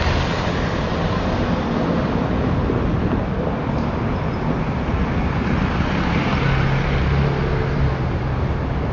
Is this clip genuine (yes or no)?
yes